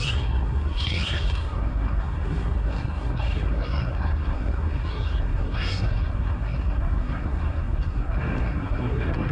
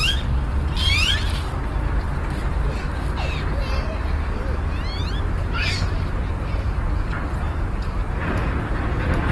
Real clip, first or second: second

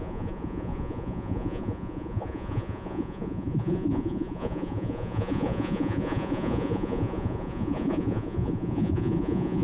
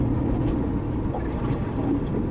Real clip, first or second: second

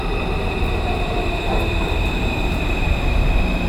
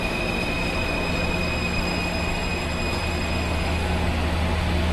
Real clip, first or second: second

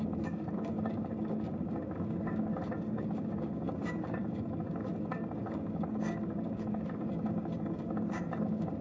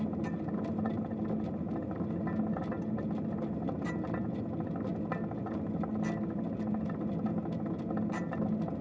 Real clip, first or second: second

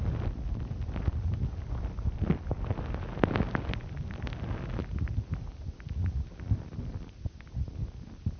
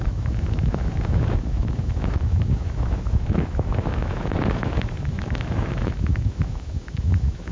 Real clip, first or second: first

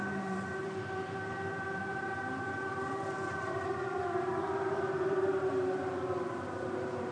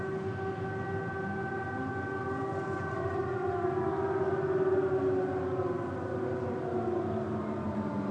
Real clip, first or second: second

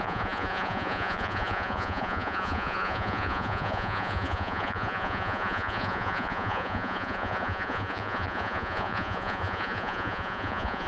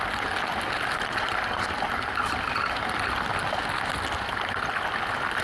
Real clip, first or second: second